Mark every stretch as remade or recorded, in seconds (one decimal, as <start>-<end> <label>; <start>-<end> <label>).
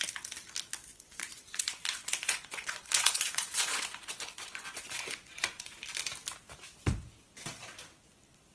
0.0-0.9 recorded; 0.9-5.8 remade; 5.8-8.5 recorded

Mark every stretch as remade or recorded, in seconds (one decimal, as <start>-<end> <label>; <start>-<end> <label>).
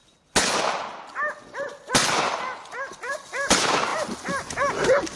0.0-5.2 recorded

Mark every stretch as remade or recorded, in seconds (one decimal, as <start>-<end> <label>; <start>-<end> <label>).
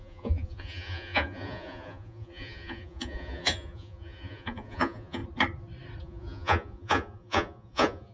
0.0-5.2 remade; 5.2-6.0 recorded; 6.0-8.1 remade